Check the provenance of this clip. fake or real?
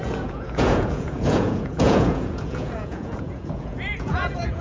fake